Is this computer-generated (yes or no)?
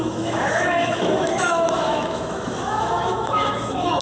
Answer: yes